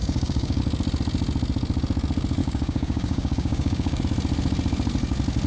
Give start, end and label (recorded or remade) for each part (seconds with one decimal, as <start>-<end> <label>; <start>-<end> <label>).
0.0-0.6 remade; 0.6-2.4 recorded; 2.4-4.0 remade; 4.0-5.5 recorded